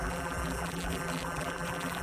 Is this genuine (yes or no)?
no